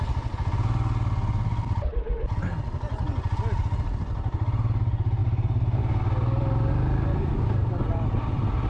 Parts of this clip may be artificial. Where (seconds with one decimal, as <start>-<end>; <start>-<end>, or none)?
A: none